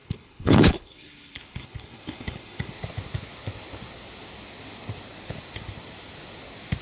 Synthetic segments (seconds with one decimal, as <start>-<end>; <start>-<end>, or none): 0.0-2.7